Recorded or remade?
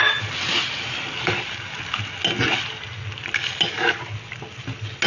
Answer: recorded